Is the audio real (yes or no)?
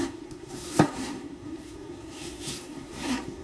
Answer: no